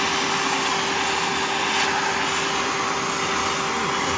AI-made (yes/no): no